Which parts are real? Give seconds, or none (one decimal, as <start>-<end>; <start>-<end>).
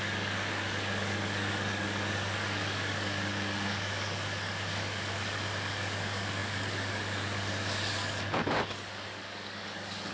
none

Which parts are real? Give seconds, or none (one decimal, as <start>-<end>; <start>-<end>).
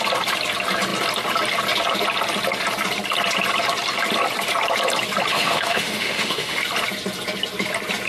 0.0-5.3; 6.6-8.1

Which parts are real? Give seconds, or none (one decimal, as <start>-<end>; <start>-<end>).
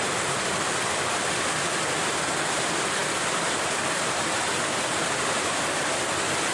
0.0-6.5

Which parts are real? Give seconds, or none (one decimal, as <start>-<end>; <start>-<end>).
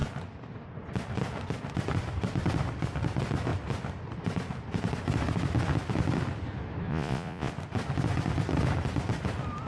0.0-6.9; 7.5-9.7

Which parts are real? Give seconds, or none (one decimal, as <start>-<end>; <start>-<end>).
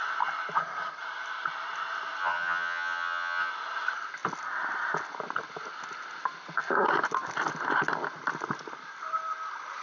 0.0-2.2; 3.5-9.8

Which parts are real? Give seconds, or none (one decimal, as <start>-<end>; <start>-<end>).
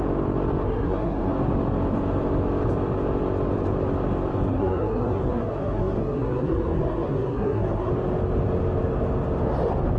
0.0-0.6; 1.3-4.5; 7.9-10.0